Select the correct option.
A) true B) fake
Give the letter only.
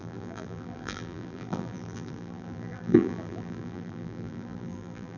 B